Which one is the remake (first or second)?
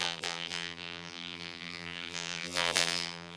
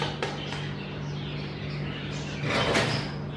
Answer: first